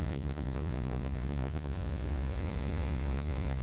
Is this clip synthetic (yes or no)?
yes